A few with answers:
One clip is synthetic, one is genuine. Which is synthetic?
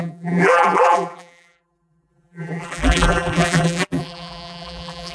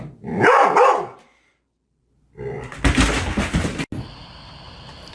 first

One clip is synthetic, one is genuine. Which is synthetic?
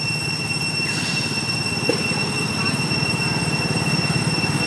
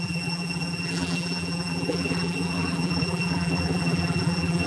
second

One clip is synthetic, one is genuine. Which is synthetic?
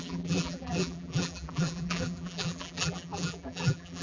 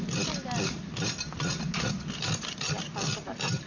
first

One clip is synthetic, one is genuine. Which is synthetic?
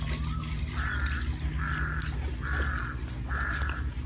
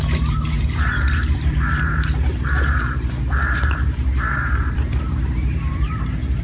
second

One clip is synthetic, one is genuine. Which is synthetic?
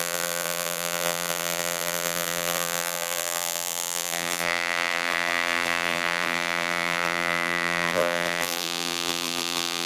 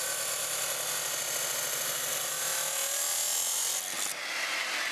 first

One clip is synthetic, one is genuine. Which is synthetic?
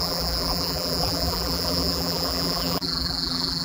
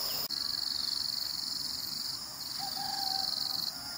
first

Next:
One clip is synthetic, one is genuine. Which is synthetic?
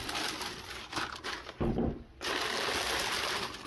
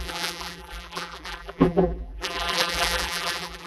second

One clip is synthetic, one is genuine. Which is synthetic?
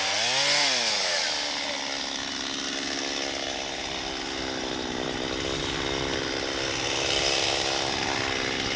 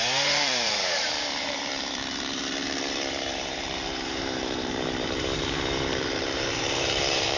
second